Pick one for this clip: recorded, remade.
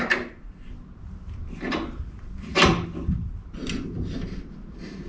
recorded